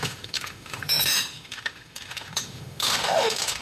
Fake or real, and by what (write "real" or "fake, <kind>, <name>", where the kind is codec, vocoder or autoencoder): fake, autoencoder, DAC-VAE